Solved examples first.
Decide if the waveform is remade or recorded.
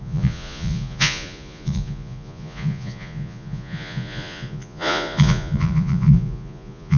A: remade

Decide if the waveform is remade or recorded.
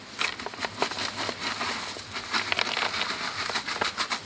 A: recorded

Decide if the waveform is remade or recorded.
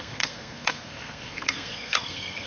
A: remade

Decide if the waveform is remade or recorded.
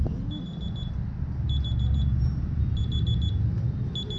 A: recorded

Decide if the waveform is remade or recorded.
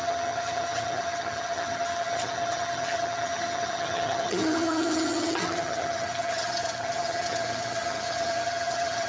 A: remade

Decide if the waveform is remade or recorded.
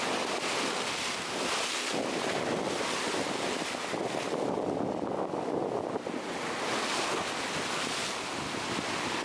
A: recorded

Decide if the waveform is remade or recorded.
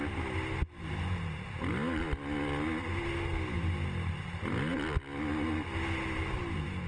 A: recorded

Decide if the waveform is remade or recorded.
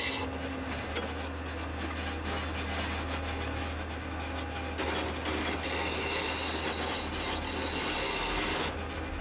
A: recorded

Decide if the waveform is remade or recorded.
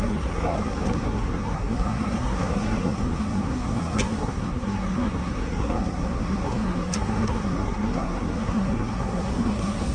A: remade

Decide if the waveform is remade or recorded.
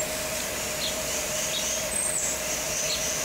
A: recorded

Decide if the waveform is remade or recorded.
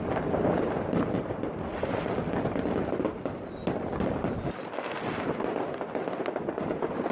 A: recorded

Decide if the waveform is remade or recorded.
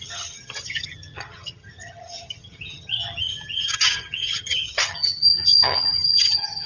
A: remade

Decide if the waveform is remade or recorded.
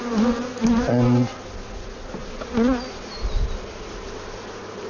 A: recorded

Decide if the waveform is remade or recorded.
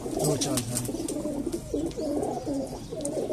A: recorded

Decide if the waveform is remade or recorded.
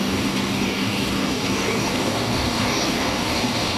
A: remade